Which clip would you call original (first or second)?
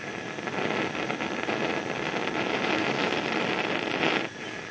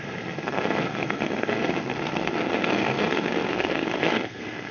first